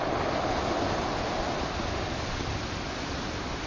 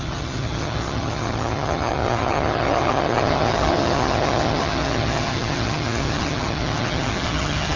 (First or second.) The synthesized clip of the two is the second